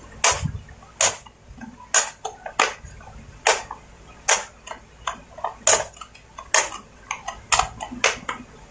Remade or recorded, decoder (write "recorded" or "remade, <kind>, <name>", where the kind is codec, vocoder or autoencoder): recorded